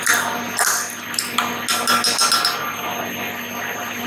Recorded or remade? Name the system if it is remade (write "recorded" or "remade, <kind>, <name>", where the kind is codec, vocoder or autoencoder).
recorded